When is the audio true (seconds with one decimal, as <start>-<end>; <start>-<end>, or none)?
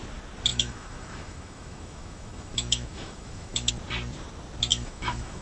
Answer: 0.0-0.5; 3.7-4.7